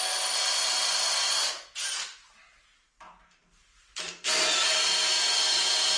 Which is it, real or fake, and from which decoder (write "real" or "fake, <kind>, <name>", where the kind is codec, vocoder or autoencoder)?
real